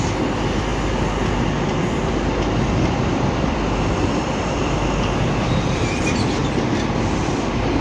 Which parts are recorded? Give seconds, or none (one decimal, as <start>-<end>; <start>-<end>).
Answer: 0.0-7.8